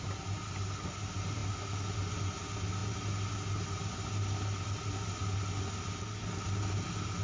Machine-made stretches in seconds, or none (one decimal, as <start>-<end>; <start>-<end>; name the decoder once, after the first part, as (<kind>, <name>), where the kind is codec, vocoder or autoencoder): none